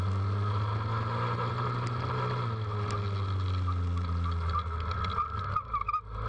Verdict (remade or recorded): recorded